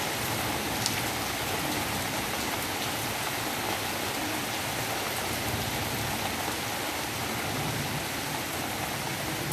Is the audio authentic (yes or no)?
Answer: yes